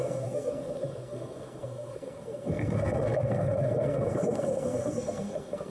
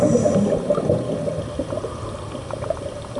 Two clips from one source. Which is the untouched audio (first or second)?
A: second